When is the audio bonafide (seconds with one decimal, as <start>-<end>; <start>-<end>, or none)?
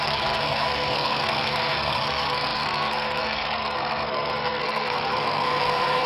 none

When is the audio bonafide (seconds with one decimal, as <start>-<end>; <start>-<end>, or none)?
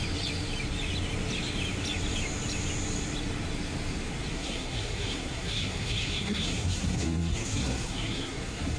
0.0-4.3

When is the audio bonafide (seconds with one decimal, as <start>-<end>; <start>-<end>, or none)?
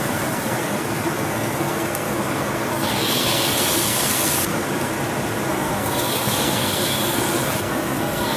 4.9-5.5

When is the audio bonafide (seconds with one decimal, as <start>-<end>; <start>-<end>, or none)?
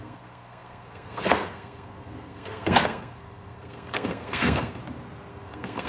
4.8-5.3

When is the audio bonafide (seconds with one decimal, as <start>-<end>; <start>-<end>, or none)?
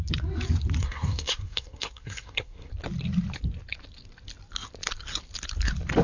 0.0-0.8; 2.7-6.0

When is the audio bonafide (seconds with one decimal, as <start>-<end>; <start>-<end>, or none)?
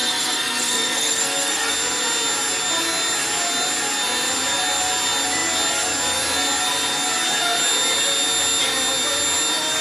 1.7-9.8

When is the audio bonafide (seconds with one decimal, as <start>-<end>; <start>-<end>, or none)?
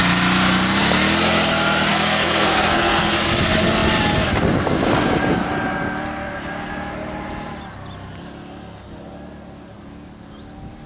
0.0-1.9; 3.1-10.9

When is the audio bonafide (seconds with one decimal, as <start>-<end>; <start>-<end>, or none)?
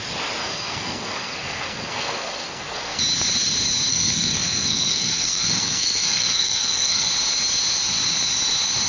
0.0-0.4; 3.0-3.9; 7.1-8.9